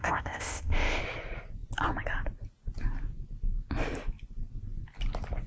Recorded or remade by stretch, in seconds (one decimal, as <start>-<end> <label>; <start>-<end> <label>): 0.0-1.0 remade; 1.0-5.5 recorded